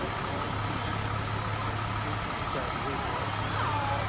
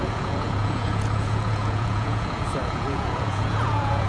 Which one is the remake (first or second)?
second